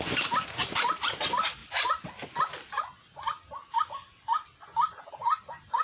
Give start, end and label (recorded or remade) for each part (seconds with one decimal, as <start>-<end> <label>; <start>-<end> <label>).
0.0-5.8 recorded